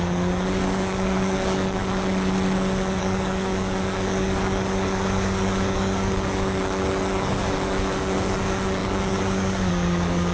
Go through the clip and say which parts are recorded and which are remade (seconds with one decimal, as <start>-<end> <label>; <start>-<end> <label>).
0.0-1.8 remade; 1.8-3.0 recorded; 3.0-10.3 remade